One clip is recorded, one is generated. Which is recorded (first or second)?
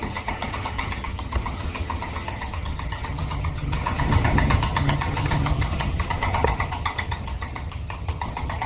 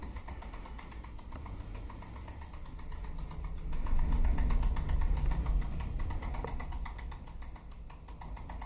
second